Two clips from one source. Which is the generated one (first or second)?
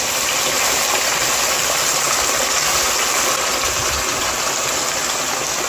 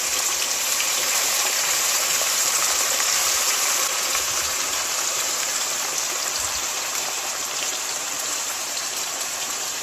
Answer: second